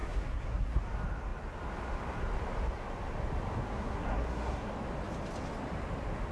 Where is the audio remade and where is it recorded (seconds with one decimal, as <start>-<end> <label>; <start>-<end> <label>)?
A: 0.0-0.8 remade; 0.8-3.7 recorded; 3.7-4.7 remade; 4.7-6.3 recorded

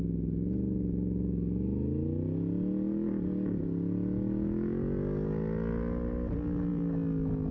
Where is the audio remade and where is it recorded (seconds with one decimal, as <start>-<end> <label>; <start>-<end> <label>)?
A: 0.0-7.5 recorded

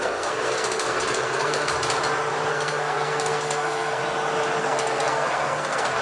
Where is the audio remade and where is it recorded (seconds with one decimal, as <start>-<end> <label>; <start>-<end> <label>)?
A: 0.0-1.7 remade; 1.7-2.5 recorded; 2.5-4.0 remade; 4.0-4.6 recorded; 4.6-6.0 remade